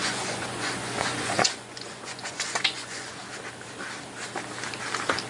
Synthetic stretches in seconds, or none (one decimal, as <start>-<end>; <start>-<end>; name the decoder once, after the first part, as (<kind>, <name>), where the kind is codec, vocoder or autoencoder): 0.0-3.2 (vocoder, Vocos)